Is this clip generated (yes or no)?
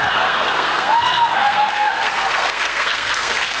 yes